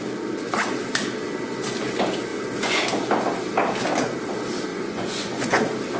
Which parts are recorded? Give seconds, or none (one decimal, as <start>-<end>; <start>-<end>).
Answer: 0.0-2.3; 2.8-4.7; 5.6-6.0